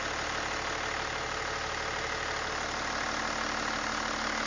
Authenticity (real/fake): real